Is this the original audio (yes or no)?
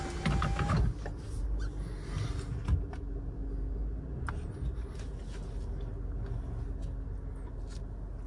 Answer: yes